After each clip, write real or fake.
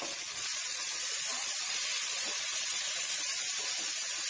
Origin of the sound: fake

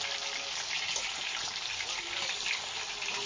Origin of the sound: real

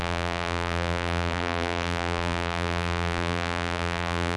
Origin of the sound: fake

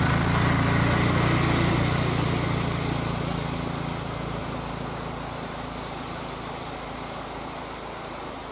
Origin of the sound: real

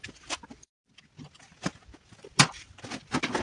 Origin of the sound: real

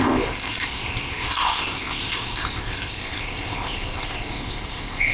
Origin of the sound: fake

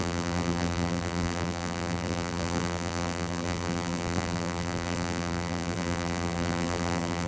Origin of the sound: fake